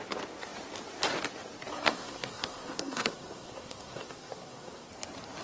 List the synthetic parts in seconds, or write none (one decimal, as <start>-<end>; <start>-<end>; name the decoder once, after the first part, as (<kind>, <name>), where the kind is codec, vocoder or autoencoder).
1.7-4.9 (codec, SNAC)